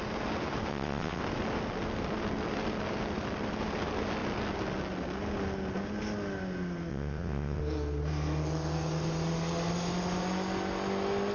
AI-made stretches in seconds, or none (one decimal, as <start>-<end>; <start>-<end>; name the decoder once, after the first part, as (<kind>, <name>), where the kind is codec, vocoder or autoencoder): 0.7-1.2 (vocoder, WaveNeXt); 6.9-7.6